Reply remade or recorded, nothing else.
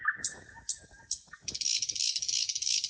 remade